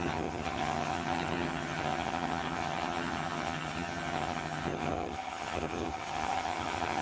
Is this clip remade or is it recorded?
remade